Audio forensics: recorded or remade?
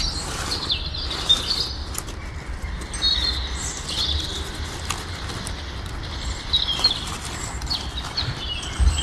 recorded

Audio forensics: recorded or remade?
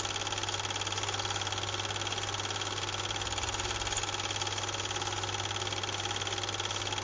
recorded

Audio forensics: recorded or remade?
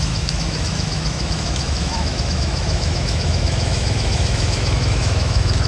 remade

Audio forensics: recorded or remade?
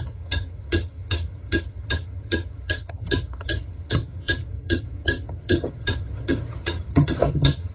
remade